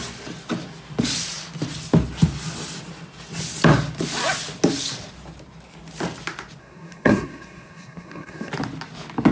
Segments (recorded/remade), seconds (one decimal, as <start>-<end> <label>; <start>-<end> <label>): 0.0-6.6 recorded; 6.6-8.5 remade; 8.5-9.3 recorded